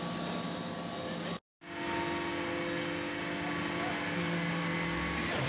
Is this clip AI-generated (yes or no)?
no